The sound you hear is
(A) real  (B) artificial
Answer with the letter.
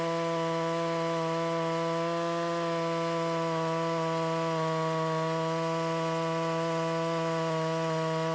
A